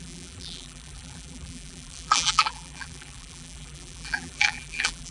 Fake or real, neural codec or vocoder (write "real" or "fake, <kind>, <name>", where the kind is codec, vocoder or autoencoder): fake, vocoder, BigVGAN v2